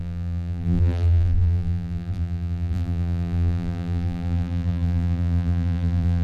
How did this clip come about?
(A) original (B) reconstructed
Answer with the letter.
B